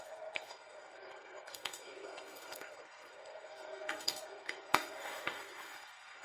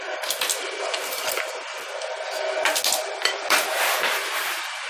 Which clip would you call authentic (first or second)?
second